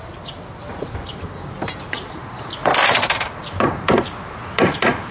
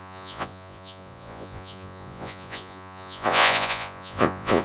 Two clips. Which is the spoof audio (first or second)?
second